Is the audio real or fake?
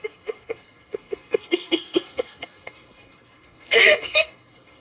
fake